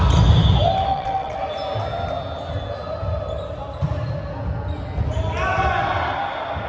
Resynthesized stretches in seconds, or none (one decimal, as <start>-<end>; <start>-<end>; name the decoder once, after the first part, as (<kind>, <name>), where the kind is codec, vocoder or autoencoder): 0.9-1.4 (vocoder, WaveNeXt)